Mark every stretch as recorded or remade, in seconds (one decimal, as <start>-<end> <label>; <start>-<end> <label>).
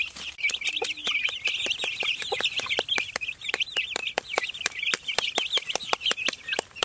0.0-1.0 remade; 1.0-1.7 recorded; 1.7-6.8 remade